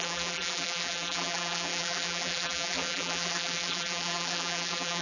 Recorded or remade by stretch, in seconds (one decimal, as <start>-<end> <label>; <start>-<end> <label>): 0.0-5.0 remade